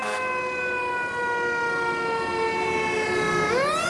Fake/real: real